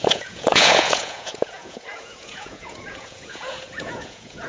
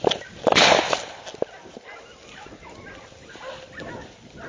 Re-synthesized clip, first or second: first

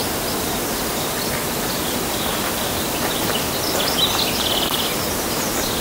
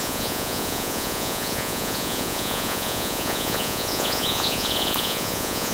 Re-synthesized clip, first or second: second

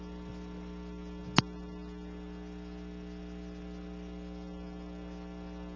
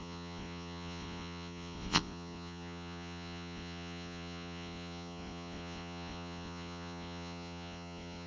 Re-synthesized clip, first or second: second